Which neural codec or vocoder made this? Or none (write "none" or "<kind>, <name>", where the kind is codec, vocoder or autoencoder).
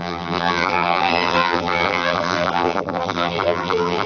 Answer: vocoder, BigVGAN v2